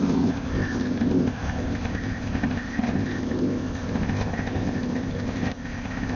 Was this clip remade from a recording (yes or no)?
yes